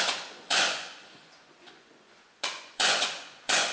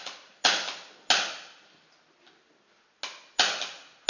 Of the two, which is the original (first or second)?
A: second